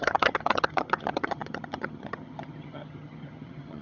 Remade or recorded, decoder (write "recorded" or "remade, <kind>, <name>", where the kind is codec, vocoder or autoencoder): remade, vocoder, HiFi-GAN